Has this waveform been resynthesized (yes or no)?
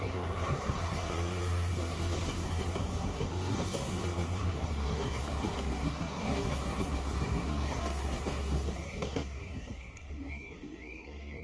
yes